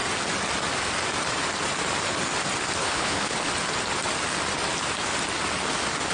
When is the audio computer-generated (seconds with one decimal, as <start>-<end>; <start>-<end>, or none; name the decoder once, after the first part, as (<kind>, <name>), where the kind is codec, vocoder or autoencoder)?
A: 2.8-3.5 (codec, HILCodec)